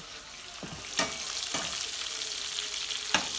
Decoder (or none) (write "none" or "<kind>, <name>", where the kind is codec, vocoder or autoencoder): none